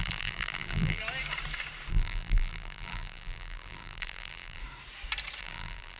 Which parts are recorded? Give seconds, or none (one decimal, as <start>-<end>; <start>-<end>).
1.0-1.9; 4.6-5.4